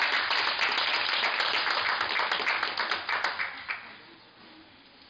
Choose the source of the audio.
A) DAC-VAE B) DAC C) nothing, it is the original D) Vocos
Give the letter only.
C